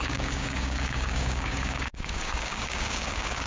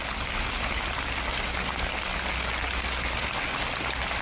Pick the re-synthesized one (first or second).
first